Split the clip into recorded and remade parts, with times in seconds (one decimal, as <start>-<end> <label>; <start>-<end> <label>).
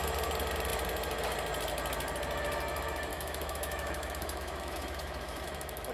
0.0-3.1 recorded; 3.1-5.9 remade